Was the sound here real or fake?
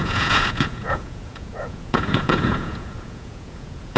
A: fake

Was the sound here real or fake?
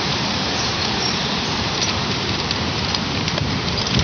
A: fake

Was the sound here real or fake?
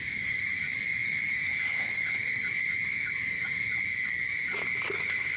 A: fake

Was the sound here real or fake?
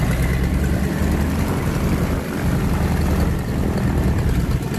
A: fake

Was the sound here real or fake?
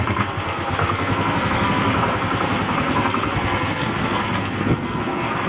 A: fake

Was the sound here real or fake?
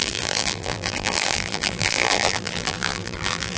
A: fake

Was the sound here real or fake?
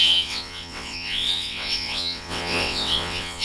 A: fake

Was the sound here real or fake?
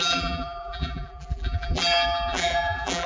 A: fake